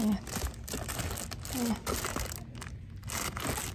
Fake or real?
real